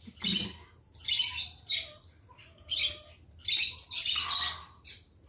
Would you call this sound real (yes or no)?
yes